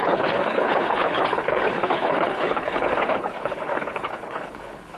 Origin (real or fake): fake